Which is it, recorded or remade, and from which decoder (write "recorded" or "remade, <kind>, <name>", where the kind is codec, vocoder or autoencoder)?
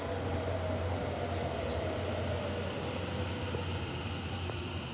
recorded